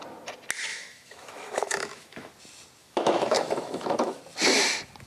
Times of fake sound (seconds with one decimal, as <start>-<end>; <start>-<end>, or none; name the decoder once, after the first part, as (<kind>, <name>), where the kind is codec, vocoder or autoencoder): 0.7-2.3 (autoencoder, DAC-VAE); 2.8-4.2